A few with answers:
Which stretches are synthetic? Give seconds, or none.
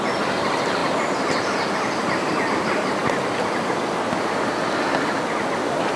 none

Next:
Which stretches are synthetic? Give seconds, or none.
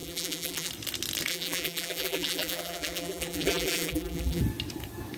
0.0-0.7 (vocoder, BigVGAN v2); 1.3-4.4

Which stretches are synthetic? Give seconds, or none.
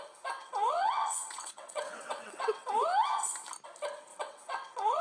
0.4-2.7 (vocoder, WaveNeXt); 4.1-5.0